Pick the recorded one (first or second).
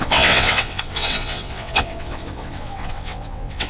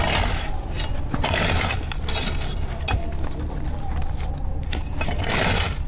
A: second